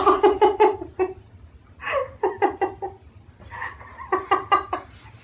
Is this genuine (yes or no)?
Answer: yes